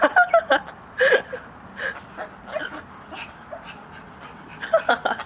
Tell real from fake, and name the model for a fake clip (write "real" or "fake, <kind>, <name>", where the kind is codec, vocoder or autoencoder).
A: real